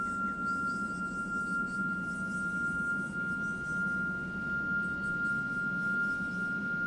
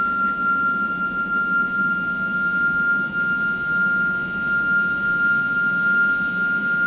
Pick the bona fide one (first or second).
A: first